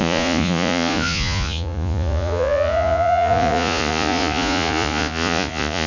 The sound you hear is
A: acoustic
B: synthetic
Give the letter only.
B